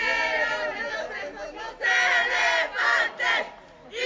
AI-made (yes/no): no